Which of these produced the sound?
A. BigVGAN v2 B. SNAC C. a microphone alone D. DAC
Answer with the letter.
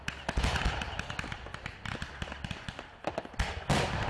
C